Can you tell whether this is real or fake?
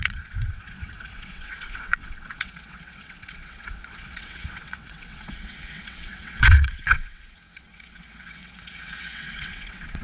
fake